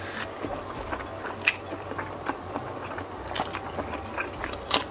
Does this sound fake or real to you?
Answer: real